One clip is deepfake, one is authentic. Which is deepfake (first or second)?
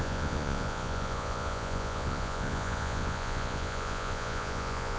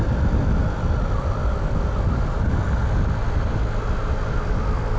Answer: first